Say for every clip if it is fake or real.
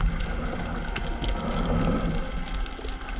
real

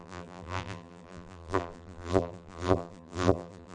fake